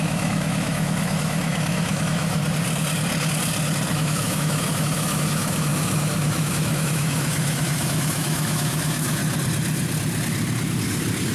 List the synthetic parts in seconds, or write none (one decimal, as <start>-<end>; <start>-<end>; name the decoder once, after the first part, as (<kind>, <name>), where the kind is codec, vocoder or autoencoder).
0.0-2.4 (autoencoder, DAC-VAE); 3.9-9.2